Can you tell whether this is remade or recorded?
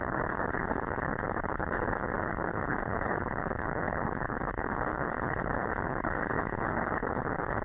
remade